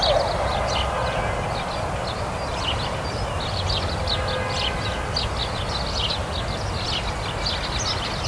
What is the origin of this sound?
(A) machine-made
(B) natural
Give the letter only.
B